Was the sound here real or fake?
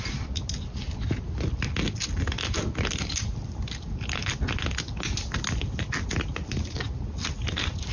real